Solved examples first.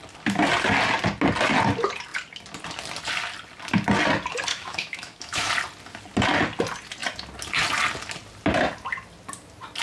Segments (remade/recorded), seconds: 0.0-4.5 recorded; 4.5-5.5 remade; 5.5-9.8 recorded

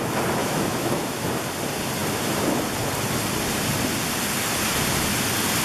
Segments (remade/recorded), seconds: 0.0-0.4 recorded; 0.4-1.3 remade; 1.3-5.6 recorded

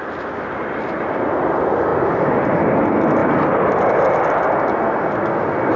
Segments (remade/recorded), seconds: 0.0-5.8 recorded

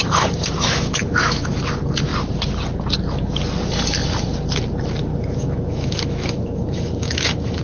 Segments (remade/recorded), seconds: 0.0-1.6 remade; 1.6-5.1 recorded; 5.1-7.6 remade